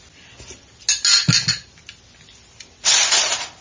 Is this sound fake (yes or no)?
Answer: no